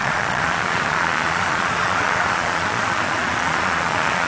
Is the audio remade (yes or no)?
yes